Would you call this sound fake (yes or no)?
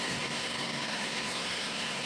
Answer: yes